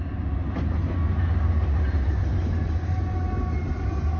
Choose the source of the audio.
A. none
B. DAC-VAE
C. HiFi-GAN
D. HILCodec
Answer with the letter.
A